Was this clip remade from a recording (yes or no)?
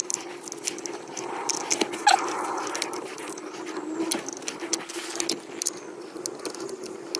no